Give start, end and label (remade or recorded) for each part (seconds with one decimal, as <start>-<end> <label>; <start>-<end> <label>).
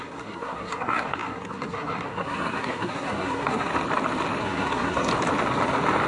0.0-3.7 remade; 3.7-4.4 recorded; 4.4-5.1 remade; 5.1-6.1 recorded